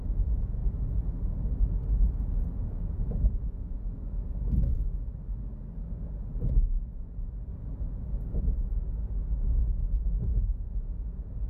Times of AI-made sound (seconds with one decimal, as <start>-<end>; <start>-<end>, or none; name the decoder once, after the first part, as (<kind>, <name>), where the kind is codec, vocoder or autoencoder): 0.0-0.6 (vocoder, Vocos); 3.3-5.1; 6.7-7.5; 8.4-11.5